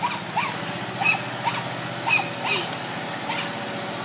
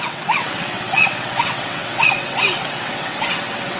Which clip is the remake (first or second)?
second